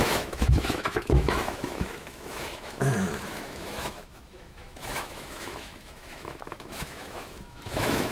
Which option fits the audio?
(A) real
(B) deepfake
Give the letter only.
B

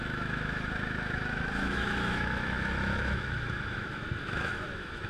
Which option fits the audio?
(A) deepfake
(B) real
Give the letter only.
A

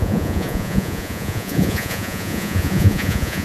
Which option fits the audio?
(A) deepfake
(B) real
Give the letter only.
A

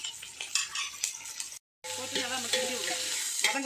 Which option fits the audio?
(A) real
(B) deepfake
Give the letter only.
A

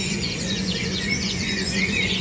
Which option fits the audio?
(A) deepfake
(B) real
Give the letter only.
A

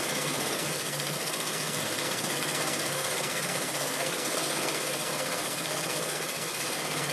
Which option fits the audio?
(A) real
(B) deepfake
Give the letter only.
B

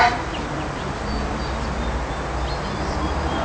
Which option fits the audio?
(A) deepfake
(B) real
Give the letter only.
B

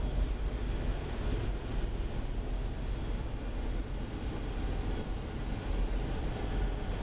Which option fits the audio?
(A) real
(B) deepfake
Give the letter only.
A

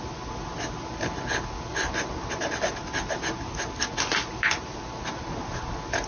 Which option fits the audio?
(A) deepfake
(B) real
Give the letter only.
B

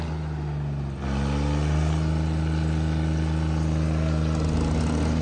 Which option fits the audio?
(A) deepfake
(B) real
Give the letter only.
B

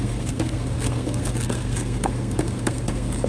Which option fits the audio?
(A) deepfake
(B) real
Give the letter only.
A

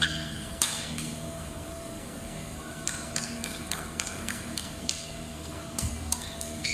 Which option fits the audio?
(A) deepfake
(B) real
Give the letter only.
A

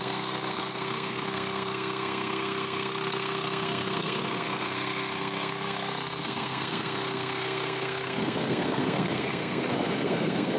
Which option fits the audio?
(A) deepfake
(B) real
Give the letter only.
A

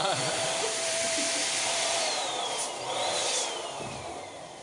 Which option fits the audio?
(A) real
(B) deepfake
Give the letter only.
B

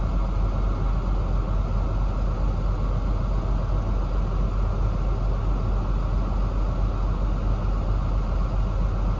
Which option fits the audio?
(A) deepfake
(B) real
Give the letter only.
B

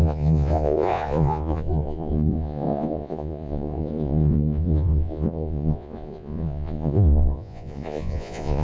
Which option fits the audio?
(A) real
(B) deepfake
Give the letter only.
B